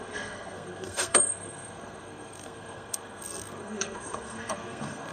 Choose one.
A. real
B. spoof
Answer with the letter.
B